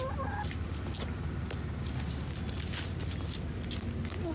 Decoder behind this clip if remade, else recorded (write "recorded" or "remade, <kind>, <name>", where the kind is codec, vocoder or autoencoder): recorded